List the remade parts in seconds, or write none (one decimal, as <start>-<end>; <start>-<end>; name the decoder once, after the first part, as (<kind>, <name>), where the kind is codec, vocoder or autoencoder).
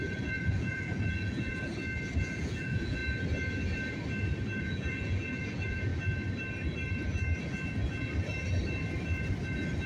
0.0-1.7 (vocoder, Vocos); 2.2-3.0; 4.6-5.9